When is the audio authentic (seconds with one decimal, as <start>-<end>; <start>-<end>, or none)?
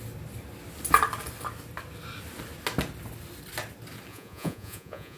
0.0-4.1